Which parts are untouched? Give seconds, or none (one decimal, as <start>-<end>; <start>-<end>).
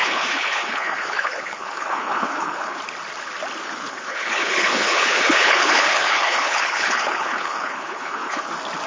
2.8-3.6; 8.5-8.9